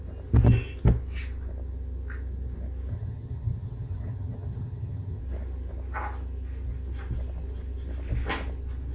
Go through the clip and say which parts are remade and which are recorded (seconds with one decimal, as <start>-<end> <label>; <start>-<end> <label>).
0.0-2.9 recorded; 2.9-5.2 remade; 5.2-8.9 recorded